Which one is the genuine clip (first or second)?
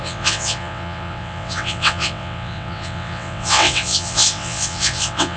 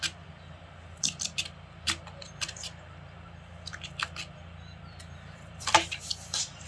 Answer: second